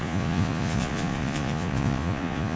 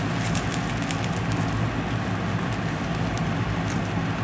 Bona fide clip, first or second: second